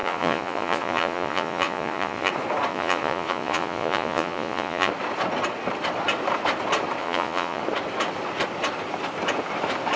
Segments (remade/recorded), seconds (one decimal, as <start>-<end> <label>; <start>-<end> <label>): 0.0-2.3 remade; 2.3-2.7 recorded; 2.7-4.9 remade; 4.9-7.0 recorded; 7.0-7.6 remade; 7.6-10.0 recorded